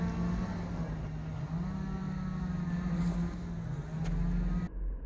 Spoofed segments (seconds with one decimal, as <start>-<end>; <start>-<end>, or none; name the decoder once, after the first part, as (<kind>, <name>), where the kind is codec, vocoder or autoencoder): none